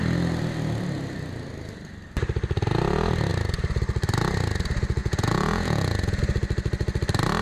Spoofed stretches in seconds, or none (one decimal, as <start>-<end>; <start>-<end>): 5.0-6.2